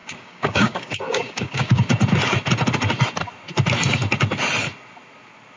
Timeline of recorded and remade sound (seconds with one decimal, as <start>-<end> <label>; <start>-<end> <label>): 0.0-2.0 remade; 2.0-5.6 recorded